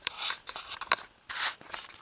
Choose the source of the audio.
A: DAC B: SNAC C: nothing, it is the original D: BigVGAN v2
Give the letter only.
C